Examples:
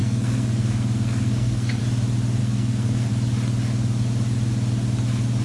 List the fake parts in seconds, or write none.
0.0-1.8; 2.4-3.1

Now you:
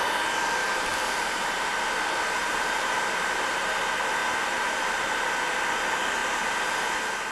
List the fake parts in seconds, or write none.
0.6-3.8; 4.2-5.1